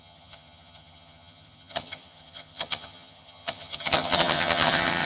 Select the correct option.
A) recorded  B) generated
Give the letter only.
B